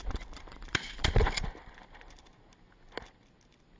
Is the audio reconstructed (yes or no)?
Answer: no